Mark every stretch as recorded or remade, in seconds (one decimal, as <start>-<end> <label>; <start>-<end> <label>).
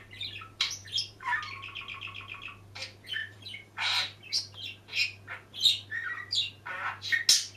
0.0-0.8 recorded; 0.8-1.4 remade; 1.4-3.2 recorded; 3.2-4.2 remade; 4.2-7.6 recorded